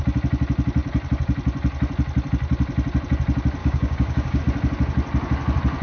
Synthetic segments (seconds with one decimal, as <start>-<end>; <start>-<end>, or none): 3.6-4.4